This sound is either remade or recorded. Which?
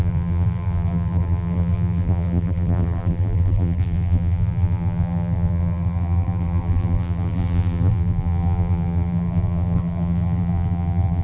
remade